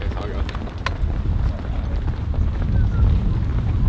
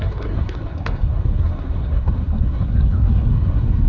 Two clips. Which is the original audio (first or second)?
first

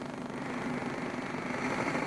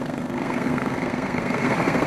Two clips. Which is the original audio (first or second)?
first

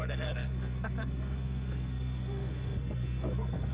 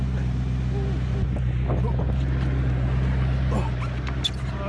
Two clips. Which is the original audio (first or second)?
second